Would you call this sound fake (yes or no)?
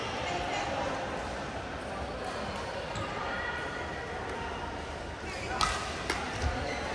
no